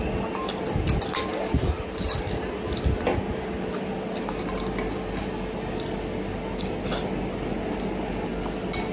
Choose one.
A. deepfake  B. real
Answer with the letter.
B